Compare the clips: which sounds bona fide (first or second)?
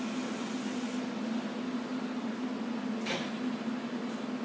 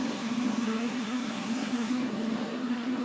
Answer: first